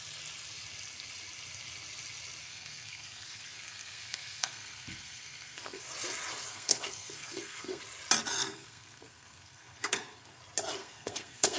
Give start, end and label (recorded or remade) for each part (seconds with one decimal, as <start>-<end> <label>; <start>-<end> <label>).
0.0-2.4 recorded; 2.4-5.8 remade; 5.8-6.5 recorded; 6.5-7.8 remade; 7.8-8.4 recorded; 8.4-10.4 remade; 10.4-10.8 recorded; 10.8-11.6 remade